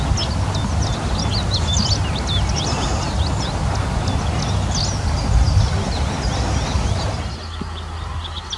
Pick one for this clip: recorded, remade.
recorded